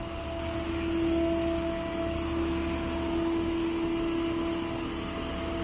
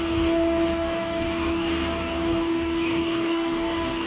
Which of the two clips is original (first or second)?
first